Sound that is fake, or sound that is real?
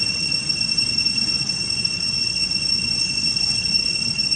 fake